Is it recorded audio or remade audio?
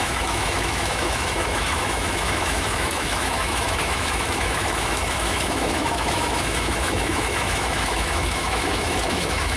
remade